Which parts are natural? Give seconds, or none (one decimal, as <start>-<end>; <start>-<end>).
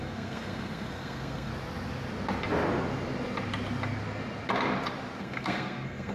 1.5-5.2